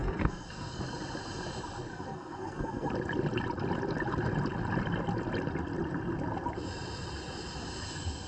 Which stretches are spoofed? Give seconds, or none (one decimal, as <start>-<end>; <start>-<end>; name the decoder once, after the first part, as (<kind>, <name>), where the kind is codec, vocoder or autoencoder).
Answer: 0.0-0.8 (codec, SNAC); 1.9-2.9